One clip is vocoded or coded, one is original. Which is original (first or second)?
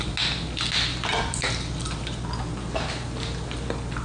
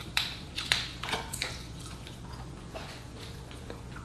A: first